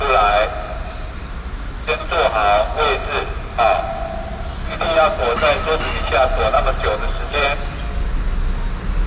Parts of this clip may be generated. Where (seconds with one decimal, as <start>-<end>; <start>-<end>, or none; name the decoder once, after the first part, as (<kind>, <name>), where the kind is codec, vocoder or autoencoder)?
none